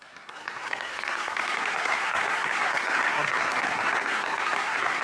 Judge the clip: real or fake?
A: fake